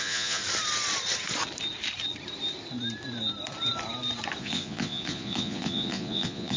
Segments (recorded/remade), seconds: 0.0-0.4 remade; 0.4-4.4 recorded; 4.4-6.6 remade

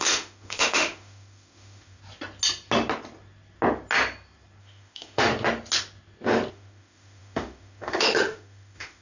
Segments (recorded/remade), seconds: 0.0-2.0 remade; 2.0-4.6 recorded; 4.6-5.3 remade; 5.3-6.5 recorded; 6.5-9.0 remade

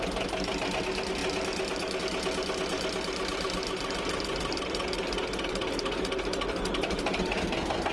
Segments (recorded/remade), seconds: 0.0-7.9 recorded

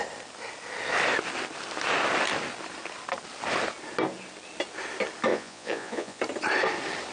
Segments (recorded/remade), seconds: 0.0-5.3 recorded; 5.3-6.2 remade; 6.2-7.1 recorded